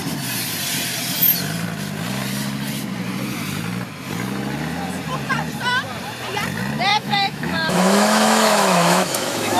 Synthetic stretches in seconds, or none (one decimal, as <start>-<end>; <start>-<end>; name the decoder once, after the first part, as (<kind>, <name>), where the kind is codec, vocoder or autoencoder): 6.9-9.6 (autoencoder, DAC-VAE)